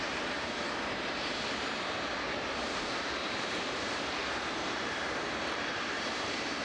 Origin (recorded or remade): remade